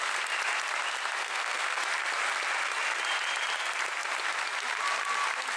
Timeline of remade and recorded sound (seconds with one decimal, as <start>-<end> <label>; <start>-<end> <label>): 0.0-1.2 recorded; 1.2-1.8 remade; 1.8-5.6 recorded

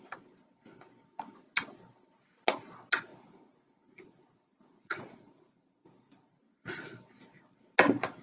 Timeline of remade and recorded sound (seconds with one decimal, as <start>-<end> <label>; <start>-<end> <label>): 0.0-3.1 recorded; 3.1-6.3 remade; 6.3-8.2 recorded

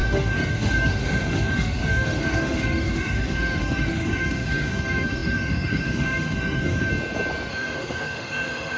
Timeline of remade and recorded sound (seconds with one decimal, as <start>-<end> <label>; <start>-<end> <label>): 0.0-6.9 remade; 6.9-7.5 recorded; 7.5-8.8 remade

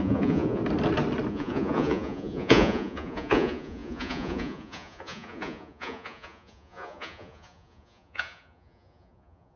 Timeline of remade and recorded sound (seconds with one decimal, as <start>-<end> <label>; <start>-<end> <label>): 0.0-0.6 remade; 0.6-1.3 recorded; 1.3-9.6 remade